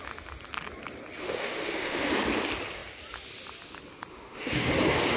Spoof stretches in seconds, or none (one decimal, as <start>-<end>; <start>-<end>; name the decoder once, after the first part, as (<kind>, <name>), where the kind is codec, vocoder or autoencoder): 1.2-2.1 (autoencoder, DAC-VAE); 4.1-4.7